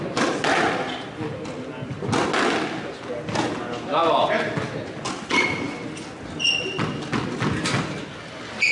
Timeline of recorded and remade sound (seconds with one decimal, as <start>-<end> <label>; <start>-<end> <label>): 0.0-8.7 recorded

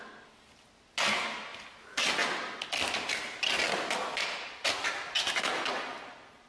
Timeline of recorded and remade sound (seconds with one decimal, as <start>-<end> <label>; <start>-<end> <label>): 0.0-6.5 recorded